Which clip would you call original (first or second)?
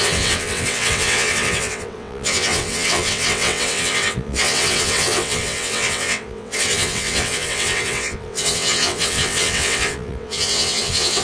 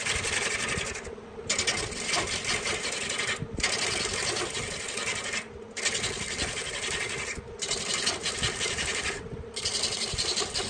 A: second